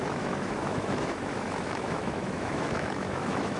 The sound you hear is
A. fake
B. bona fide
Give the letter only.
A